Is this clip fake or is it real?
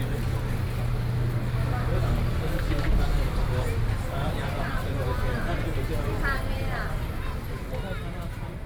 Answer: real